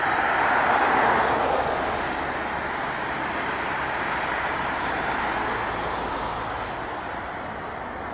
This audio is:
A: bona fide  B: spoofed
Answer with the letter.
A